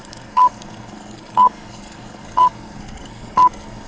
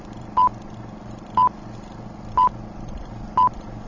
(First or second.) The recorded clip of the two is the second